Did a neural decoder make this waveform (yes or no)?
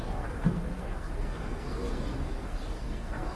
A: yes